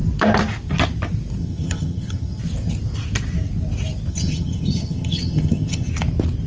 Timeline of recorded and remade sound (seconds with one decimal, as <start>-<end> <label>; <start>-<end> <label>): 0.0-1.4 recorded; 1.4-2.4 remade; 2.4-4.1 recorded; 4.1-5.9 remade; 5.9-6.5 recorded